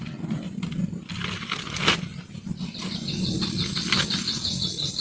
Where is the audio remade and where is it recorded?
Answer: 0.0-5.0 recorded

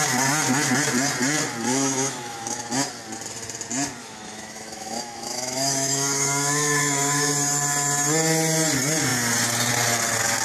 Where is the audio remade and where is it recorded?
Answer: 0.0-1.7 recorded; 1.7-2.6 remade; 2.6-4.0 recorded; 4.0-7.3 remade; 7.3-10.4 recorded

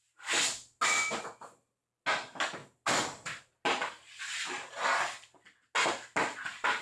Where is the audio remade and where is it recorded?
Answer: 0.0-6.8 recorded